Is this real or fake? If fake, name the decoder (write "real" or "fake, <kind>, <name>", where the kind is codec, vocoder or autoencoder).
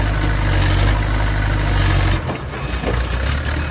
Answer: real